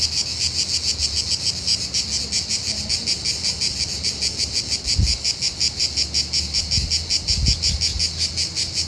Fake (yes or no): no